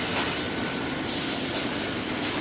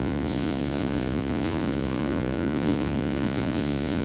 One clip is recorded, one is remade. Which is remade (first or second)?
second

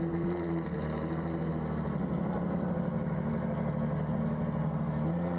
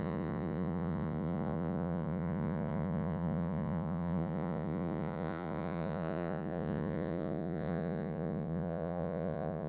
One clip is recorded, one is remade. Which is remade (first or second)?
second